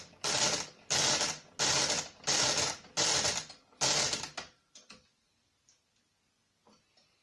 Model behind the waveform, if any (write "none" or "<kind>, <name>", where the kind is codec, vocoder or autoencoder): none